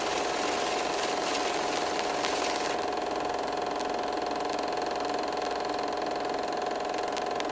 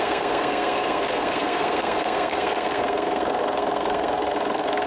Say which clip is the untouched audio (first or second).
first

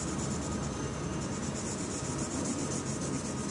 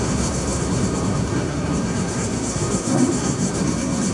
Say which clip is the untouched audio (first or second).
first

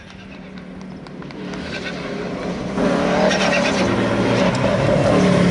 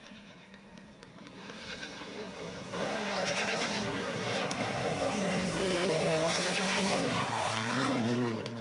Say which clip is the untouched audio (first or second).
first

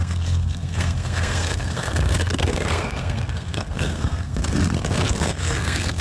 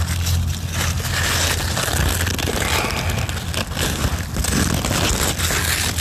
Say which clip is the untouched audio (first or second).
second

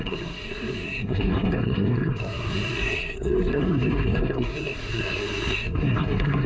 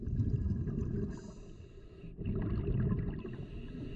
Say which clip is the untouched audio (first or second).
second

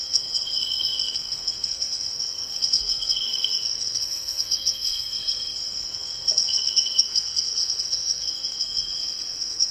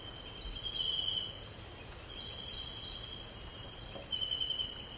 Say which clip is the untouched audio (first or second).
second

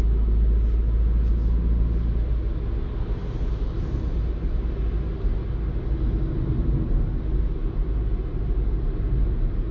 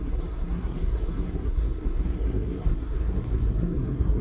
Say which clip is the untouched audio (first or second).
first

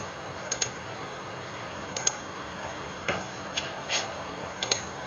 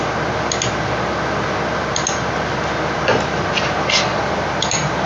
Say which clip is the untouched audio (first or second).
second